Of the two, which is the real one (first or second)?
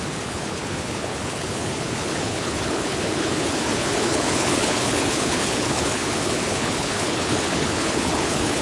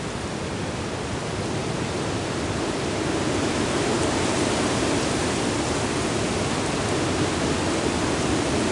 second